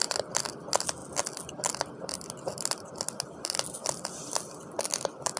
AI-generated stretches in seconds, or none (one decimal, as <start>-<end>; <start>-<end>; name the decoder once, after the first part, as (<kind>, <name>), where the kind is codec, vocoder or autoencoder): none